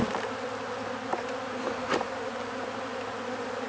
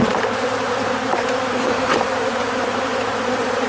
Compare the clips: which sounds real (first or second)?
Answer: first